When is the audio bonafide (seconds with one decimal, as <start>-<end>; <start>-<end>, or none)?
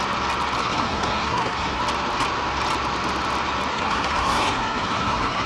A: 0.0-0.6; 1.8-3.7